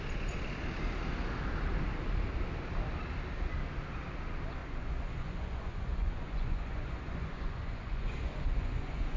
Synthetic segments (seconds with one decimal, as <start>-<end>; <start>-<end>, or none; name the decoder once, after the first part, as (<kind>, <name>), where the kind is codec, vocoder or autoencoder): 4.6-9.2 (vocoder, Vocos)